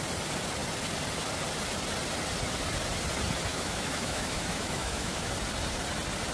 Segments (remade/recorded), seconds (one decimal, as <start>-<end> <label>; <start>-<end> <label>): 0.0-3.5 recorded; 3.5-5.3 remade; 5.3-6.3 recorded